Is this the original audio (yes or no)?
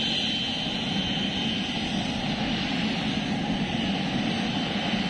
yes